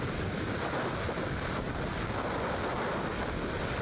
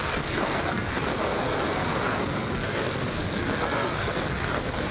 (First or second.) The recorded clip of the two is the first